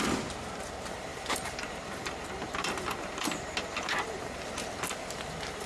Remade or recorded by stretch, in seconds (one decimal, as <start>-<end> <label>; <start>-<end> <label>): 0.0-1.1 recorded; 1.1-4.5 remade; 4.5-5.7 recorded